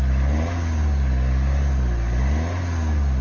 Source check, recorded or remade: recorded